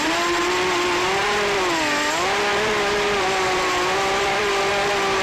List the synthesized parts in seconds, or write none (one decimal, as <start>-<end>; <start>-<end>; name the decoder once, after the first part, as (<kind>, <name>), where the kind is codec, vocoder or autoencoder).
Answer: 2.5-4.6 (vocoder, BigVGAN v2)